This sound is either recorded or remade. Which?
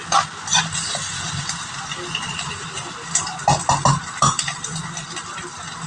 recorded